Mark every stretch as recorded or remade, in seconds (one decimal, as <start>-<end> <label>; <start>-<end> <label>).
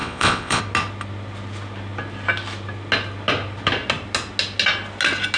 0.0-0.6 remade; 0.6-5.4 recorded